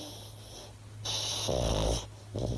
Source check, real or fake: real